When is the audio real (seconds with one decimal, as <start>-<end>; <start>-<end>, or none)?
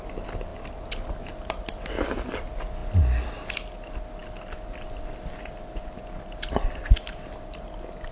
0.0-8.1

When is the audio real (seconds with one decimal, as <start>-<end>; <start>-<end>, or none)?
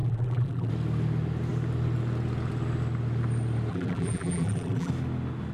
0.7-3.7; 4.9-5.5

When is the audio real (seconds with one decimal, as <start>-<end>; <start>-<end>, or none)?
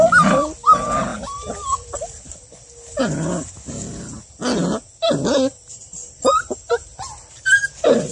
0.0-1.1; 2.6-6.0; 6.6-8.1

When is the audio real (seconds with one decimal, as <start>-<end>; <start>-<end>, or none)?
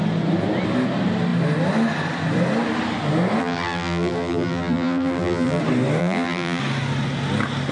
0.0-3.4; 5.6-6.0; 6.6-7.7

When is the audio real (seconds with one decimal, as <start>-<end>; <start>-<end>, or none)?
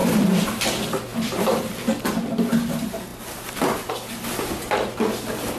0.6-1.1; 1.7-5.6